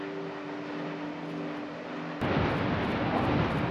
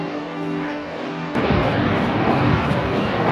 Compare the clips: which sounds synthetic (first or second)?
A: second